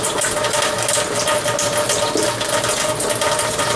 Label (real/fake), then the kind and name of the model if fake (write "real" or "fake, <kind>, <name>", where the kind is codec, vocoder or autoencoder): real